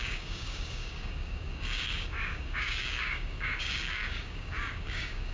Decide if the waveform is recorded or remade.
remade